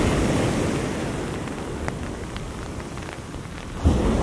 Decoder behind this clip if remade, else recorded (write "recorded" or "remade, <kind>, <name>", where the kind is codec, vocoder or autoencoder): recorded